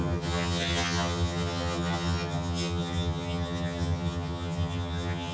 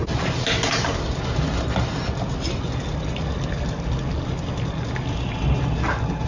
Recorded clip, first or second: second